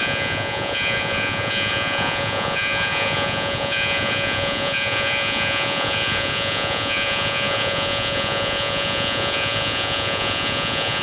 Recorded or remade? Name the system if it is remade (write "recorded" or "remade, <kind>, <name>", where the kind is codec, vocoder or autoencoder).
remade, vocoder, Vocos